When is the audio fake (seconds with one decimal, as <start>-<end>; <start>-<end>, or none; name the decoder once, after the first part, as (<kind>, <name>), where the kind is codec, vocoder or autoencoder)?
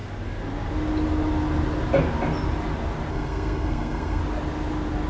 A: 3.1-4.2 (codec, SNAC)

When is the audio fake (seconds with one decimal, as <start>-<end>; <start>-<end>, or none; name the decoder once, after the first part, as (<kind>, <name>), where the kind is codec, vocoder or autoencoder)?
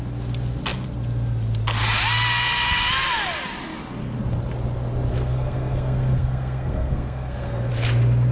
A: 5.1-7.7 (codec, SNAC)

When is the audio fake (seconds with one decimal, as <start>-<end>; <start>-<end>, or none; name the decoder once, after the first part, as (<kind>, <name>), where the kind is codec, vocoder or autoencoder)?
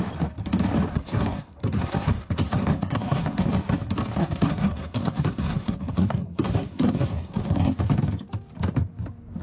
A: 0.9-3.5 (codec, SNAC); 4.2-7.8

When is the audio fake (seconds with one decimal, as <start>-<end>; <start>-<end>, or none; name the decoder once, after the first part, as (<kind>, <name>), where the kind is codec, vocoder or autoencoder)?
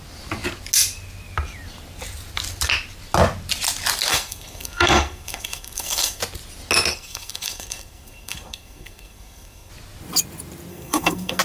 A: 4.1-6.2 (codec, SNAC); 6.9-9.7; 10.7-11.4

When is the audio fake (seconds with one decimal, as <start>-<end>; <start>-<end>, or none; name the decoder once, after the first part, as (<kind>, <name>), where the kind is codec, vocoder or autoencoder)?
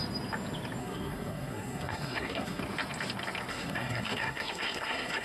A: 0.8-2.6 (codec, SNAC); 3.5-5.2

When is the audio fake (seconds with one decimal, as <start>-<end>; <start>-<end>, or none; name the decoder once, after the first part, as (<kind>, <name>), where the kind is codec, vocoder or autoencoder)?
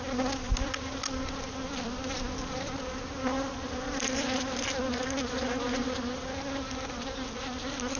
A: none